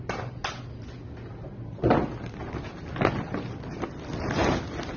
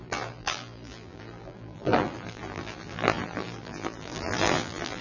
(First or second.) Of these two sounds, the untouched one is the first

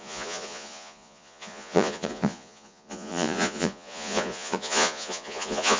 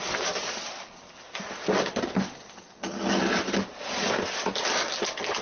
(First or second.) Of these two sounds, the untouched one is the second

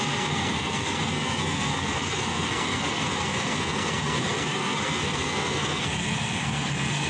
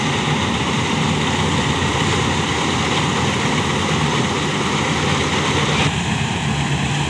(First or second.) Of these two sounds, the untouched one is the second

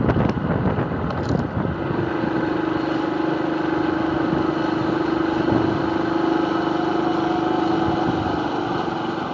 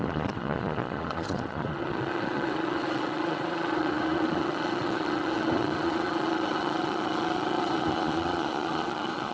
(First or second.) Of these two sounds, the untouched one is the first